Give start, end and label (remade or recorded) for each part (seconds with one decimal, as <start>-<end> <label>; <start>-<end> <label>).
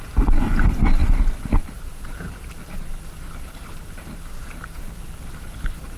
0.0-6.0 recorded